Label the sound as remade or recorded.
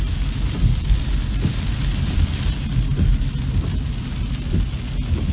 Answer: recorded